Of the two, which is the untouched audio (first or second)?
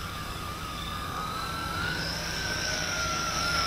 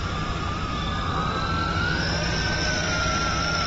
second